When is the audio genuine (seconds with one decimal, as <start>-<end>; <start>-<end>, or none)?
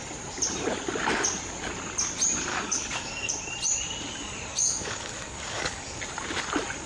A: 0.0-2.5; 3.3-4.5; 6.0-6.9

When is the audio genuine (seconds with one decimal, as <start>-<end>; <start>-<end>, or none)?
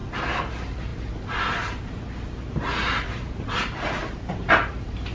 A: 0.0-0.5; 0.9-4.0